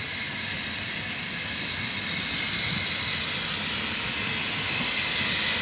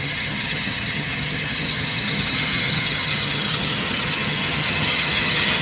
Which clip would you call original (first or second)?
first